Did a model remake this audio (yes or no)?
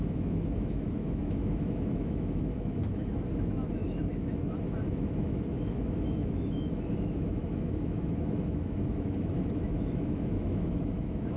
yes